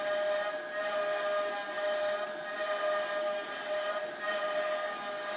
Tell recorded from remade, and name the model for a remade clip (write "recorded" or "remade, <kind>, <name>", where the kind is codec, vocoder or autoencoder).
recorded